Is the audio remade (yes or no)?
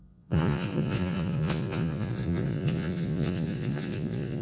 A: yes